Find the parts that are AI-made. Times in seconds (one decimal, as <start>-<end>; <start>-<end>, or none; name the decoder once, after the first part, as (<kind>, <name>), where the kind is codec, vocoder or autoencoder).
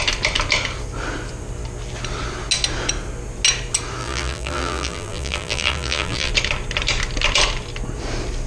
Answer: 4.0-6.3 (vocoder, BigVGAN v2)